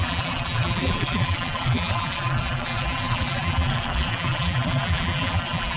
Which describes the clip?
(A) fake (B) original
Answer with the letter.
A